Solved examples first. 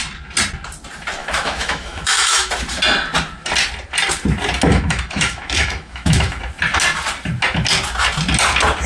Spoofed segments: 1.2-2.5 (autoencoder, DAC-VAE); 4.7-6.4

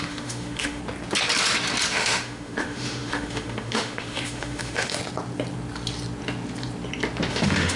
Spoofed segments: 0.0-0.8 (autoencoder, DAC-VAE); 1.9-5.0; 7.3-7.8

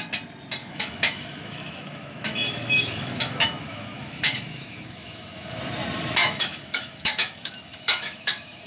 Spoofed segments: 0.6-5.6 (autoencoder, DAC-VAE); 6.2-8.7

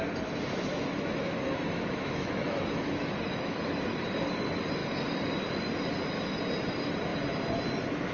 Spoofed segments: 0.7-4.0 (autoencoder, DAC-VAE)

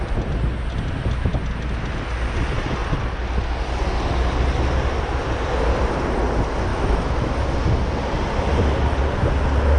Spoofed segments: 6.7-7.4 (autoencoder, DAC-VAE)